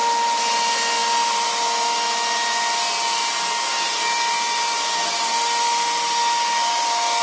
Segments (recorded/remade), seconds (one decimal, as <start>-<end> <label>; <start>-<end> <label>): 0.0-7.2 recorded